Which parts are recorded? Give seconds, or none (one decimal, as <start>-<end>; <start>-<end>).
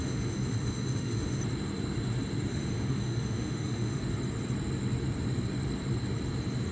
1.4-2.5; 4.0-6.7